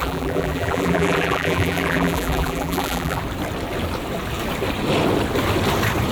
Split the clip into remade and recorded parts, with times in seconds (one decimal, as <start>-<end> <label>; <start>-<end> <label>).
0.0-3.2 remade; 3.2-6.1 recorded